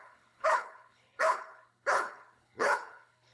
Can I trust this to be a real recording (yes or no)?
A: no